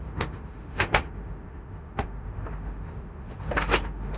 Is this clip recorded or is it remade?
remade